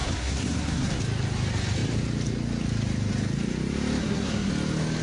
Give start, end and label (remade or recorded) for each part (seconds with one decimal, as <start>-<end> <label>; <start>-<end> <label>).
0.0-1.0 remade; 1.0-4.0 recorded; 4.0-4.5 remade; 4.5-5.0 recorded